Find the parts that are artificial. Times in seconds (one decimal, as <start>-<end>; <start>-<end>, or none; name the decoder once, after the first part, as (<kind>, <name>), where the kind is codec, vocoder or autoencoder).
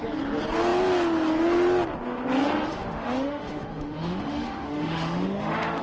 2.7-5.8 (autoencoder, DAC-VAE)